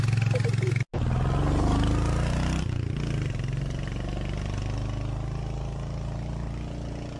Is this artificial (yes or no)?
no